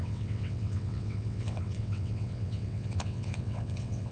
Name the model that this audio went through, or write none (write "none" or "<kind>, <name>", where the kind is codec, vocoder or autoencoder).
vocoder, WaveNeXt